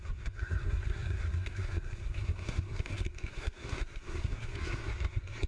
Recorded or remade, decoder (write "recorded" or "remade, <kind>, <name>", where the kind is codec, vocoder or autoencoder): remade, codec, SNAC